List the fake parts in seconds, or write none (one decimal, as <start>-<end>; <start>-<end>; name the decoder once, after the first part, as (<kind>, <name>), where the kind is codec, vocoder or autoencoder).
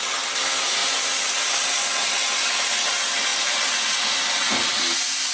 none